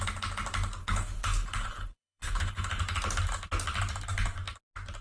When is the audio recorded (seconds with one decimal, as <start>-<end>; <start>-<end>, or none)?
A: 0.0-0.8; 2.8-5.0

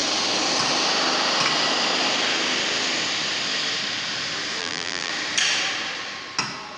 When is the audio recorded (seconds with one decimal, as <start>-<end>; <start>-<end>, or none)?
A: 0.0-4.6; 5.1-6.8

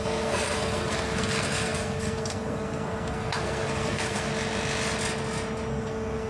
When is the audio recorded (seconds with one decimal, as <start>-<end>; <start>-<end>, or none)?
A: 4.3-5.7

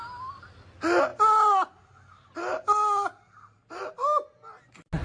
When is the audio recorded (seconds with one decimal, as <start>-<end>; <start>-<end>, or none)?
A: 0.0-5.0

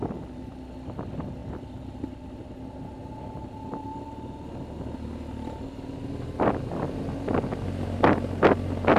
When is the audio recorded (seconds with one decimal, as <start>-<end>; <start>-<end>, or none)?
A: 0.0-1.4; 2.6-9.0

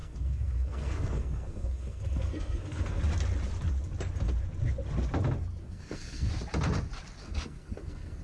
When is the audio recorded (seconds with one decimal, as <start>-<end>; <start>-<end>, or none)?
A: 3.0-5.6; 6.3-7.2

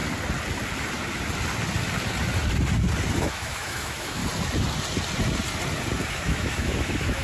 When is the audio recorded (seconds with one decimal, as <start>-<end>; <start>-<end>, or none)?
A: 0.0-3.2; 4.2-6.1